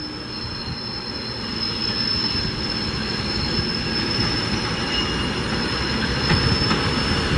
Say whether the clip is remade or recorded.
recorded